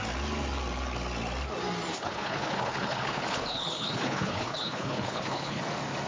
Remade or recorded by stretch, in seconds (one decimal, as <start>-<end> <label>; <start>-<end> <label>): 0.0-1.9 recorded; 1.9-5.6 remade; 5.6-6.1 recorded